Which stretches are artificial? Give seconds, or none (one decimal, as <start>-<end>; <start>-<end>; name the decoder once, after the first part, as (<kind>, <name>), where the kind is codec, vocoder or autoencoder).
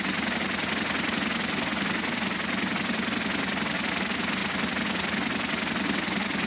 none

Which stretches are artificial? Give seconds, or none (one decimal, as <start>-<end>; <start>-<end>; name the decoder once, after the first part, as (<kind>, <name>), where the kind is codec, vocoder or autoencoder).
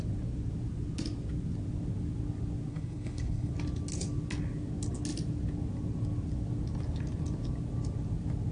2.7-3.5 (codec, HILCodec)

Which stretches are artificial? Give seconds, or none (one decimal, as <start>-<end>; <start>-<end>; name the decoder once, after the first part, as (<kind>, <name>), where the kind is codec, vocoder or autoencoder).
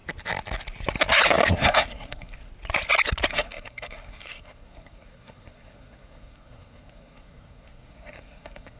1.5-2.5 (codec, SNAC); 3.3-8.8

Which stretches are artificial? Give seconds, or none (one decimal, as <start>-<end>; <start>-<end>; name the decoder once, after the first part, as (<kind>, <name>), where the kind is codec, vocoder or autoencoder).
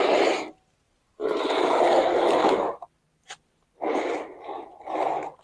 none